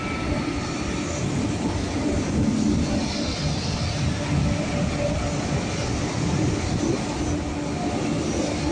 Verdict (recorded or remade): recorded